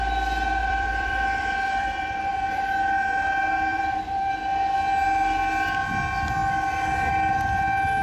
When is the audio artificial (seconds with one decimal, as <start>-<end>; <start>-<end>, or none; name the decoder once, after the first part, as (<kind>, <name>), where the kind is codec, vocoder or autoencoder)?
0.6-2.7 (vocoder, BigVGAN v2); 3.7-4.3